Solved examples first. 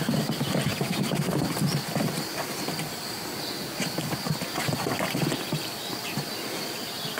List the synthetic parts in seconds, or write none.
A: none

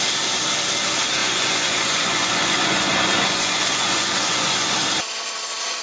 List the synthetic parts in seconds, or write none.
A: 1.2-4.7 (vocoder, Vocos)

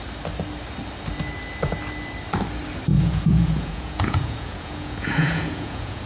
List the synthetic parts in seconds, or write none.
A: 2.9-6.0 (vocoder, Vocos)

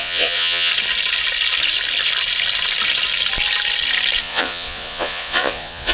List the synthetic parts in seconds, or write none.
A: 0.0-0.7 (vocoder, Vocos); 4.2-5.9